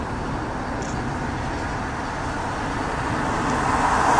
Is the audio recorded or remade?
recorded